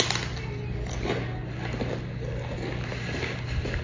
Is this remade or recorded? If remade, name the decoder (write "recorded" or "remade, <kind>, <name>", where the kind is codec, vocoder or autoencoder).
recorded